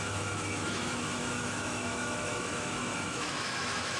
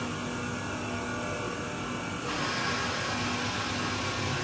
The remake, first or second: first